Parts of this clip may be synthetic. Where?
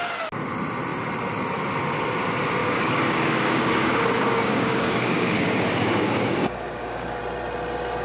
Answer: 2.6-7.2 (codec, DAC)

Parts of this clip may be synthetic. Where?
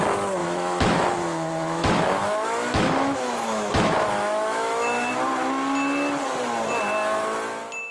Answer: 0.4-5.1 (autoencoder, DAC-VAE)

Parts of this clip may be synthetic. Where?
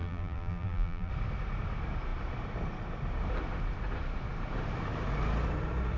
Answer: 0.0-1.1 (vocoder, BigVGAN v2)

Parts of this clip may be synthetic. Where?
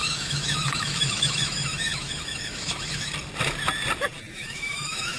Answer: 0.0-3.1 (autoencoder, DAC-VAE); 4.3-5.2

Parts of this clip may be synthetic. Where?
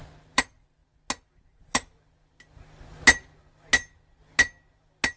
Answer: 0.0-0.8 (vocoder, BigVGAN v2); 1.4-1.9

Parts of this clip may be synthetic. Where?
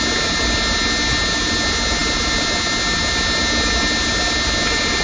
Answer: none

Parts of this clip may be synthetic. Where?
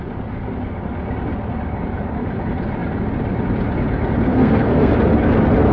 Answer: 4.3-4.9 (codec, SNAC)